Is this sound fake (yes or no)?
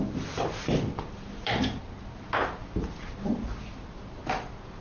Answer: no